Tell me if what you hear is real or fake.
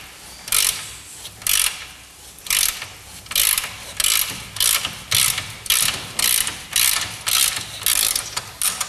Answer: real